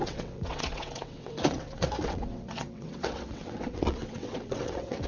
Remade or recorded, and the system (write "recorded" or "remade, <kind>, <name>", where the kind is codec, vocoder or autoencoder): remade, vocoder, WaveNeXt